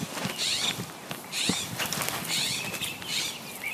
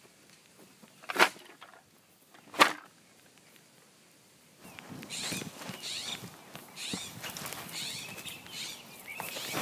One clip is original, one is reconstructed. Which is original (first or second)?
second